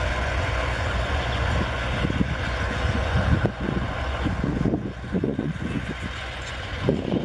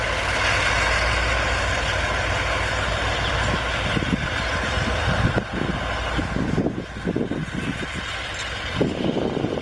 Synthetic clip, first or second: first